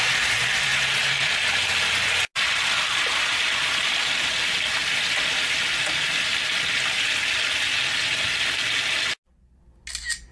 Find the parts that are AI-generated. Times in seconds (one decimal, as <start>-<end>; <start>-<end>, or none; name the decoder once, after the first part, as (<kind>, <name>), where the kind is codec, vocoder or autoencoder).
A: none